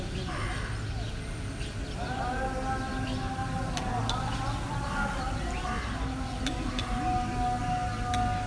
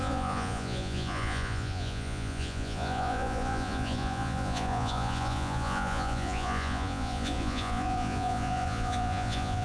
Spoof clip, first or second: second